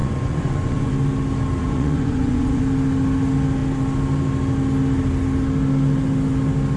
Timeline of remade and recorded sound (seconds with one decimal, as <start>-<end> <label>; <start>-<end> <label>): 0.0-0.9 remade; 0.9-1.6 recorded; 1.6-2.6 remade; 2.6-6.8 recorded